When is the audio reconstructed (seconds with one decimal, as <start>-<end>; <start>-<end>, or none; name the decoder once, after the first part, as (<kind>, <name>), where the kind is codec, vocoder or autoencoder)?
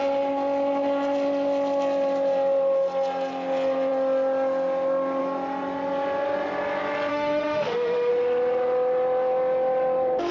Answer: 7.1-8.1 (autoencoder, DAC-VAE)